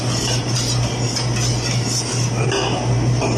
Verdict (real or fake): real